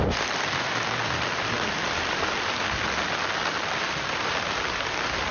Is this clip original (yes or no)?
yes